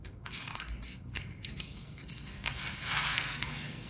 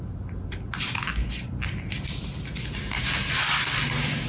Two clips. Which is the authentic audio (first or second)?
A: second